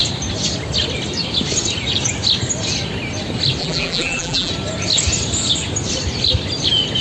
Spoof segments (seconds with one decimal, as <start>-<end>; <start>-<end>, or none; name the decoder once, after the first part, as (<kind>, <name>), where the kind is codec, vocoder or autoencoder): 3.6-4.5 (vocoder, BigVGAN v2)